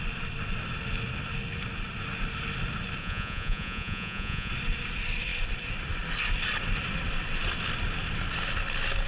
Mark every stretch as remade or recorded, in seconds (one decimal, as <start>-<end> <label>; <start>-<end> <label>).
0.0-3.0 recorded; 3.0-4.5 remade; 4.5-9.1 recorded